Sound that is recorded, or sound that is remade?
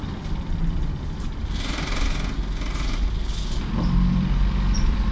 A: remade